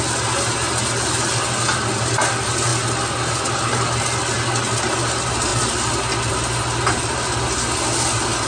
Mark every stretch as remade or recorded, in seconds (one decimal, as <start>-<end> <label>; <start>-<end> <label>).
0.0-8.5 recorded